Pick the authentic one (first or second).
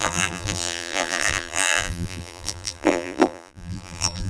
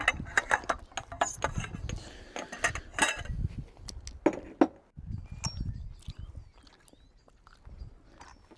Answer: second